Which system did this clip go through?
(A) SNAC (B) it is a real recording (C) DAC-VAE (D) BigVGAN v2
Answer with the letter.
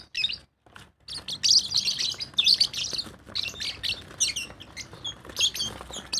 B